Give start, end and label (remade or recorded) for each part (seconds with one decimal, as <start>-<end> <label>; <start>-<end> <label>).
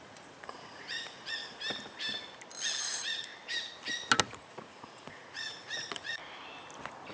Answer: 0.0-1.4 remade; 1.4-2.8 recorded; 2.8-3.3 remade; 3.3-4.2 recorded; 4.2-6.2 remade; 6.2-7.1 recorded